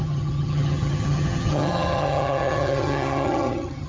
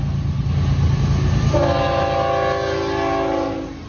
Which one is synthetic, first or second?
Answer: first